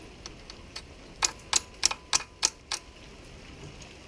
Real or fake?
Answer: real